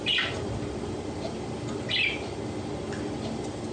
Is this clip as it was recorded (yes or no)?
yes